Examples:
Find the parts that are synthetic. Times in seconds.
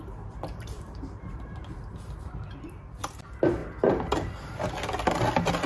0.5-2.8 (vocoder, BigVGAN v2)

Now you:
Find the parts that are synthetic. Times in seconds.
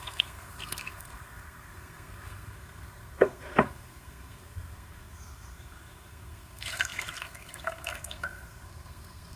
0.0-9.4 (codec, SNAC)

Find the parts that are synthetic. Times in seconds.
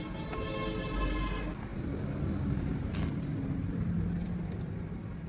none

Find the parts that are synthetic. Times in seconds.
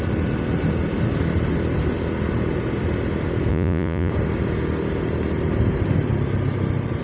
3.5-4.1 (vocoder, Vocos)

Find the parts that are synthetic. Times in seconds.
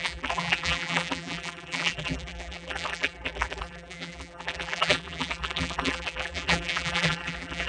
0.0-7.7 (vocoder, BigVGAN v2)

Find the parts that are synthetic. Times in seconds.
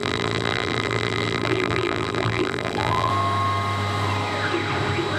0.0-3.1 (vocoder, BigVGAN v2)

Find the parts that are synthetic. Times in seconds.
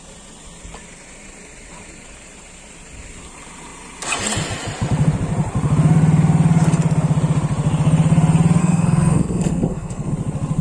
8.6-10.1 (codec, SNAC)